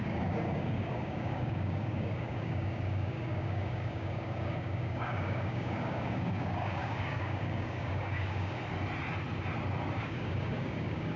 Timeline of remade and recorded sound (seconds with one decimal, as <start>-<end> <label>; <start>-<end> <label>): 0.0-8.6 remade; 8.6-10.0 recorded; 10.0-11.2 remade